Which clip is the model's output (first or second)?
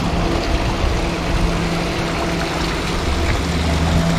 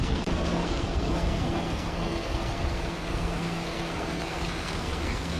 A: second